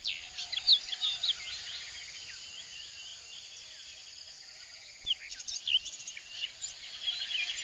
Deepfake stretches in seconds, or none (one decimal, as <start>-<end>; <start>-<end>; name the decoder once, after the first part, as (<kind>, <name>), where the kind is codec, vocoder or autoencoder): none